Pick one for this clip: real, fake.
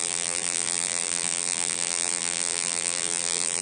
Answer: fake